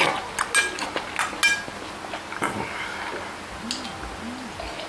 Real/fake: real